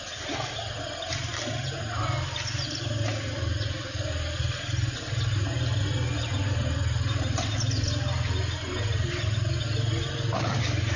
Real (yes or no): yes